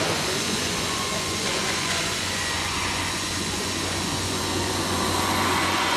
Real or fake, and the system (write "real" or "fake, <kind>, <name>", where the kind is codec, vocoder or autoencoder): fake, vocoder, Vocos